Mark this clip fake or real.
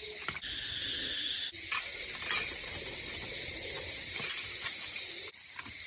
real